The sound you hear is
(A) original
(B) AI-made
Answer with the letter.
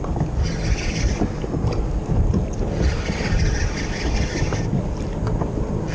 A